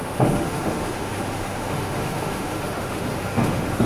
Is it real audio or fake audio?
fake